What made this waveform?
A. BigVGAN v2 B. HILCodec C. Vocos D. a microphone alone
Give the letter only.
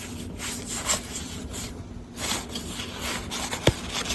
D